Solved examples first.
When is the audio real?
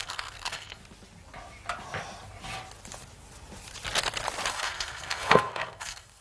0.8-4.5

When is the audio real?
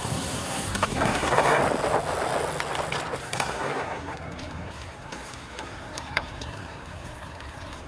1.6-3.2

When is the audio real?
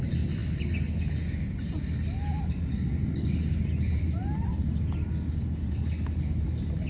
0.0-6.9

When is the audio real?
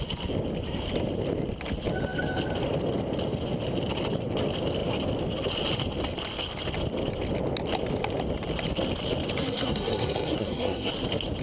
0.0-9.4; 10.9-11.4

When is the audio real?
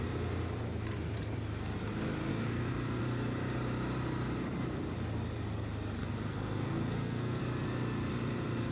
0.0-2.3; 3.0-6.0; 7.4-8.7